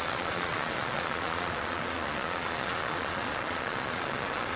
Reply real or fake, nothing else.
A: fake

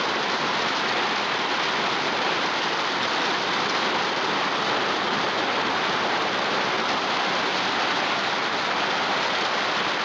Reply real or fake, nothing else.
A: real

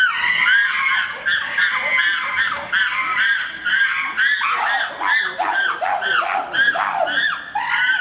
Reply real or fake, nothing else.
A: real